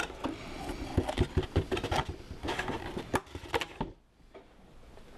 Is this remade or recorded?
recorded